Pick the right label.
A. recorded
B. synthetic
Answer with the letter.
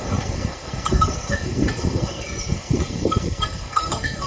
B